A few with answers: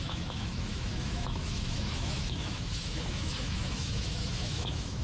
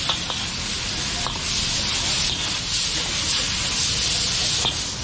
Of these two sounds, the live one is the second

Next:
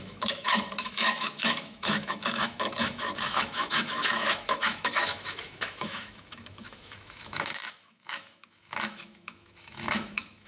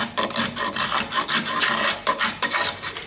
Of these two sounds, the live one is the second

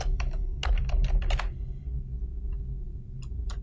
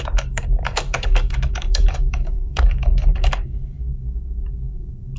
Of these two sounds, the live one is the first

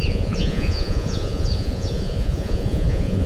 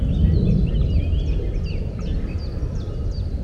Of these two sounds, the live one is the second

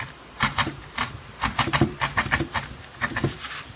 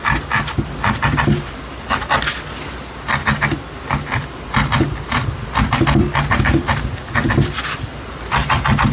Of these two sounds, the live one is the second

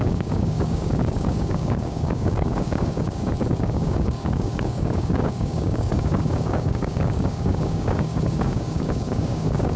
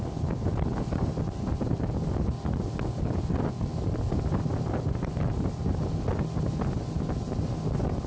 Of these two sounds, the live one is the second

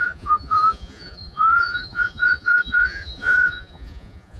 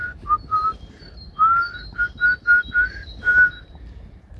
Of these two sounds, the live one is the second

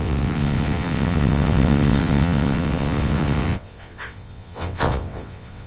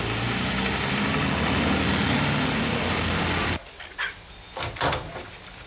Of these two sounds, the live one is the second